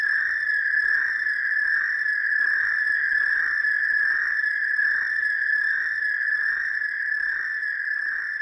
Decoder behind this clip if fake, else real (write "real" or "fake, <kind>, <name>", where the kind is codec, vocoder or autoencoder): fake, vocoder, BigVGAN v2